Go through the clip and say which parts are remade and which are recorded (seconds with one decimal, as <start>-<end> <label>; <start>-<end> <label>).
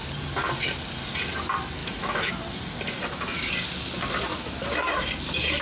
0.0-1.8 recorded; 1.8-2.3 remade; 2.3-3.0 recorded; 3.0-3.5 remade; 3.5-4.3 recorded; 4.3-5.1 remade; 5.1-5.6 recorded